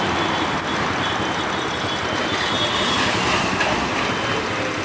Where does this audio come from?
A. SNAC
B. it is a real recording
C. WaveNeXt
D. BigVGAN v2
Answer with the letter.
B